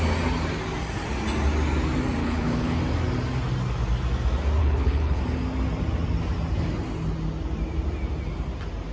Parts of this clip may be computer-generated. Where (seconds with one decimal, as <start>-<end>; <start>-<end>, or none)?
2.2-2.8; 4.6-5.2